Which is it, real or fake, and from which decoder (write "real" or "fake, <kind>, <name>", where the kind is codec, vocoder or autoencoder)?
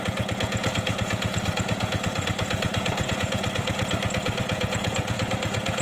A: fake, vocoder, Vocos